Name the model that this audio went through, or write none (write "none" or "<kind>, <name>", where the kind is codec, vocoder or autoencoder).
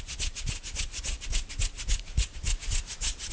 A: none